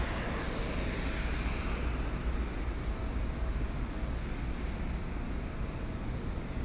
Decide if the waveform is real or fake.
real